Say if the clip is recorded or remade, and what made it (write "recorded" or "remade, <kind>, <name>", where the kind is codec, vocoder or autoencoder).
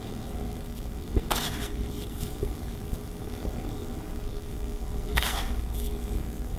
remade, codec, SNAC